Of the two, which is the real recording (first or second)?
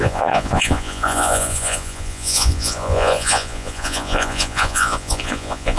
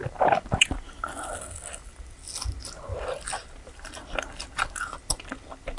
second